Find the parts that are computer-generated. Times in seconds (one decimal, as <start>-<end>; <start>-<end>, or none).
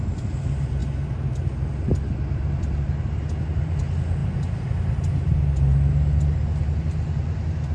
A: none